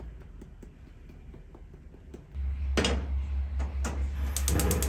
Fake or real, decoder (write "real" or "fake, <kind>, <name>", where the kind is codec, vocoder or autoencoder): real